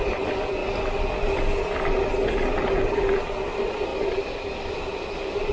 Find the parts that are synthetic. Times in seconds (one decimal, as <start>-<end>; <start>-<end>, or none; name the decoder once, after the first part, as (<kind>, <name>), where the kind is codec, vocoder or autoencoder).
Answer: none